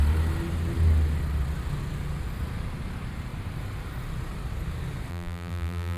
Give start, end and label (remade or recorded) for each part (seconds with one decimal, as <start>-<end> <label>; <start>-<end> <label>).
0.0-5.1 recorded; 5.1-6.0 remade